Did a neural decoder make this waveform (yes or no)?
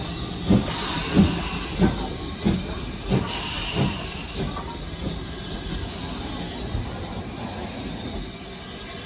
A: no